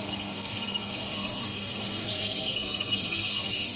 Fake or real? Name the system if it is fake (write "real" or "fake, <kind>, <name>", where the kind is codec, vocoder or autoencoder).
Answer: fake, codec, SNAC